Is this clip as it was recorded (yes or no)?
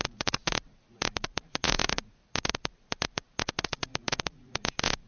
no